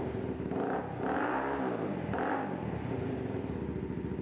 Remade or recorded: recorded